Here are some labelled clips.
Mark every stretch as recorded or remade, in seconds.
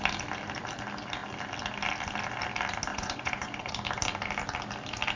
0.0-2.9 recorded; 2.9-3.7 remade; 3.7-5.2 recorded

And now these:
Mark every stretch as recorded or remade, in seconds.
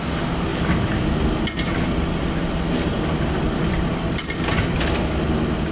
0.0-5.7 recorded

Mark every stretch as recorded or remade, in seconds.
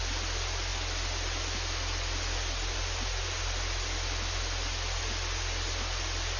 0.0-6.4 recorded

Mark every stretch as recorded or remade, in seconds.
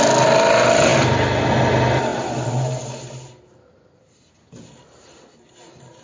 0.0-6.0 recorded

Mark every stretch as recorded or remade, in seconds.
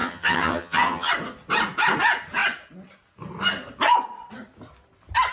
0.0-1.1 remade; 1.1-5.3 recorded